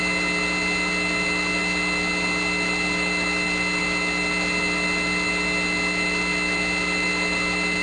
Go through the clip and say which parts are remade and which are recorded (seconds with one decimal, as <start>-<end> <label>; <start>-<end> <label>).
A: 0.0-7.8 recorded